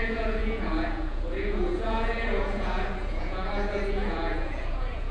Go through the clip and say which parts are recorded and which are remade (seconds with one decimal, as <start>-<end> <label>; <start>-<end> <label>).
0.0-5.1 remade